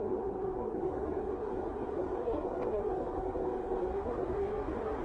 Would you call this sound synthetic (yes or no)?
yes